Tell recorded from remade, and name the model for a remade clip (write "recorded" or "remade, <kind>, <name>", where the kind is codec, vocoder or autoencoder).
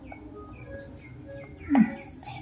recorded